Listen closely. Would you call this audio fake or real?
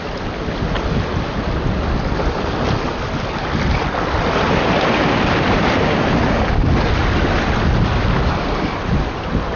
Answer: real